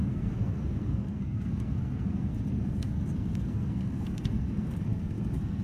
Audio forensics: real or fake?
fake